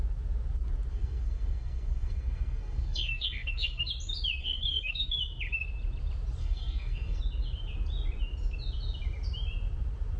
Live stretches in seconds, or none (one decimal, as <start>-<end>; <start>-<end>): 0.0-0.9; 3.9-4.4; 5.2-6.4; 7.2-10.2